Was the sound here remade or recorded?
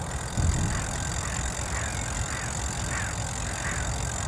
recorded